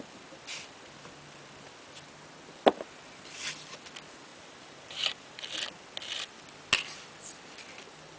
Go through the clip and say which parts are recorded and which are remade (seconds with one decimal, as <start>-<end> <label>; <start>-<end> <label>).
0.0-4.3 recorded; 4.3-5.4 remade; 5.4-8.2 recorded